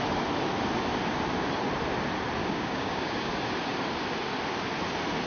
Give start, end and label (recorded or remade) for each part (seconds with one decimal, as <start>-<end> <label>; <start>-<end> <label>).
0.0-2.4 recorded; 2.4-3.3 remade; 3.3-5.3 recorded